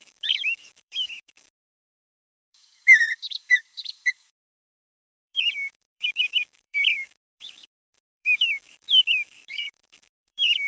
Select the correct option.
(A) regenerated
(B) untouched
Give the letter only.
A